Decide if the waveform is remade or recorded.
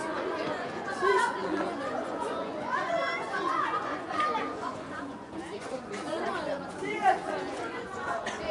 remade